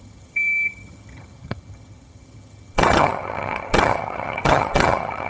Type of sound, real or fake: fake